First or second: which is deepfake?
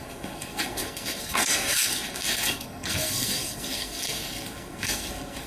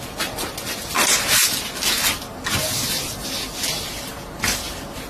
first